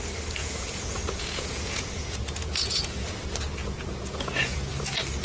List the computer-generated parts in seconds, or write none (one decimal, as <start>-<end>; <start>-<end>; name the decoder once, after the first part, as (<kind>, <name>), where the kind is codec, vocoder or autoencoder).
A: 0.4-3.2 (vocoder, Vocos); 3.6-4.8